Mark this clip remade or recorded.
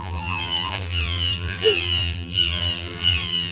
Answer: remade